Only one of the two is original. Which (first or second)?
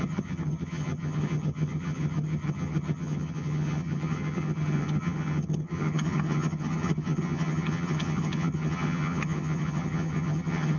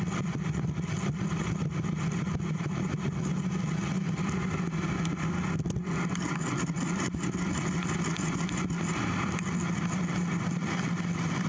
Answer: second